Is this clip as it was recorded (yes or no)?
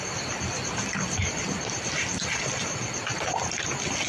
yes